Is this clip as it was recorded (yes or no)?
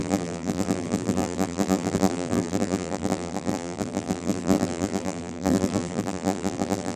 no